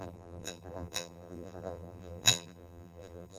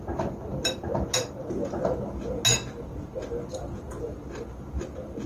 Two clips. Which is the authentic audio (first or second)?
second